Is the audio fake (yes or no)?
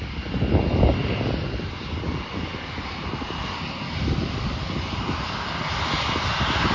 no